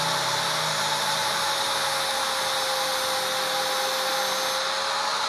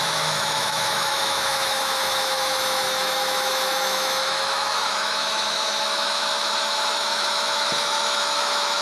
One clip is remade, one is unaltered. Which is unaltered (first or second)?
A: first